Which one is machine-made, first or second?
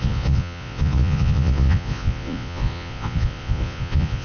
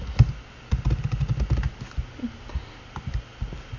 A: first